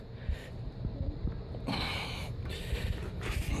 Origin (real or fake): real